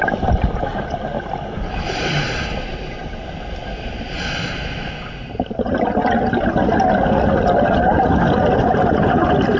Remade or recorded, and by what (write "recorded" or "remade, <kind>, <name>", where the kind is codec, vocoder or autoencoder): recorded